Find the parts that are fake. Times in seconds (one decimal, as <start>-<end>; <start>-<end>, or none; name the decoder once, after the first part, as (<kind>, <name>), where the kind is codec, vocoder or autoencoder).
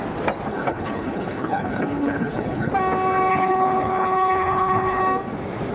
0.5-2.7 (codec, HILCodec); 3.3-5.0